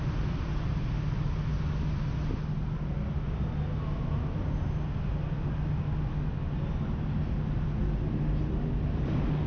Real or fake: real